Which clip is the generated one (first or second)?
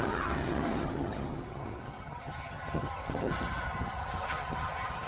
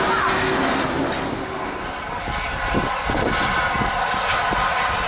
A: first